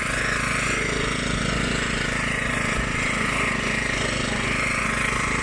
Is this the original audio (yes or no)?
no